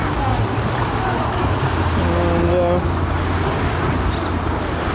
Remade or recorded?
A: recorded